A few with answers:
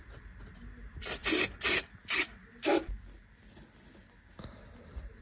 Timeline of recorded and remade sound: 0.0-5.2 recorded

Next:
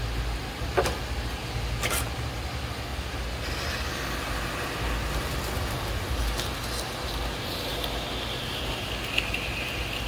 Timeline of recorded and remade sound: 0.0-10.1 recorded

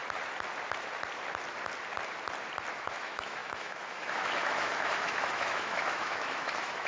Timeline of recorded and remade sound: 0.0-2.7 recorded; 2.7-6.9 remade

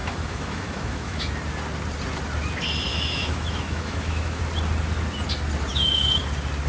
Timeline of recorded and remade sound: 0.0-1.3 remade; 1.3-2.9 recorded; 2.9-4.4 remade; 4.4-5.7 recorded; 5.7-6.2 remade; 6.2-6.7 recorded

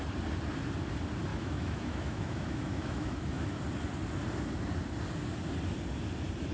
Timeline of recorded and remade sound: 0.0-1.3 recorded; 1.3-3.6 remade; 3.6-6.5 recorded